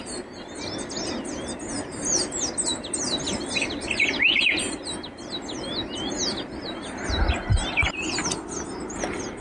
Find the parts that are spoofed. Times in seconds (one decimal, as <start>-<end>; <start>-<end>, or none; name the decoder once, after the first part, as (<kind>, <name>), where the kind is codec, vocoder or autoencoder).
none